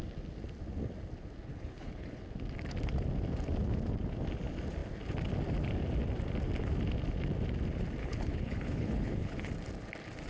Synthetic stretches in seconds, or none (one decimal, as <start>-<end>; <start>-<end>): 1.5-2.2; 8.0-9.5